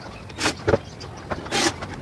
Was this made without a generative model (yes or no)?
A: yes